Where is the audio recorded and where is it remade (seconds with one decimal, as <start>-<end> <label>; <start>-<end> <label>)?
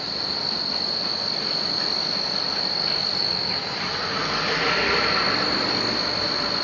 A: 0.0-3.2 recorded; 3.2-3.8 remade; 3.8-6.6 recorded